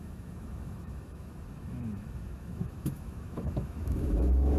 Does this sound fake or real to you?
fake